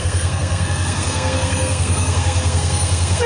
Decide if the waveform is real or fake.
fake